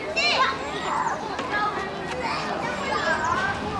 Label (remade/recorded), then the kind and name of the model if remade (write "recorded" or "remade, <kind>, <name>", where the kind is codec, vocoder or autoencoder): recorded